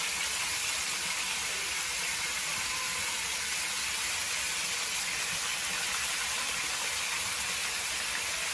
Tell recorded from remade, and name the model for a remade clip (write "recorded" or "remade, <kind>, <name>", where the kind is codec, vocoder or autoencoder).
recorded